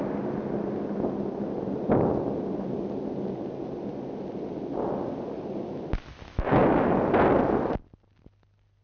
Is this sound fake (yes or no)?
no